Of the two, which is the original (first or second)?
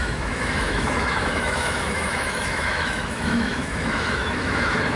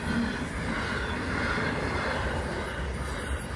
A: second